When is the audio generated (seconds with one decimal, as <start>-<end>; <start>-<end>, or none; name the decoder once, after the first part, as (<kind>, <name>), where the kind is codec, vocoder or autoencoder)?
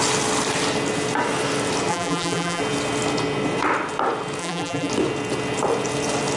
1.9-2.6 (vocoder, BigVGAN v2); 4.4-4.9